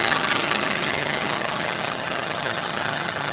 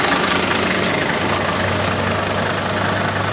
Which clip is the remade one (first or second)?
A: first